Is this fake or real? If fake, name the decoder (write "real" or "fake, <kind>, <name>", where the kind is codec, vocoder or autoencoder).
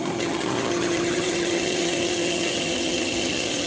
fake, vocoder, HiFi-GAN